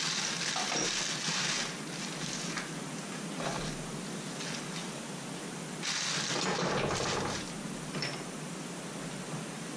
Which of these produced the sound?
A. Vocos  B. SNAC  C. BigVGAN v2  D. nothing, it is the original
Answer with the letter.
D